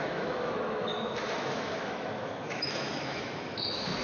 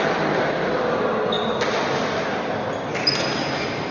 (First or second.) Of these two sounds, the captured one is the second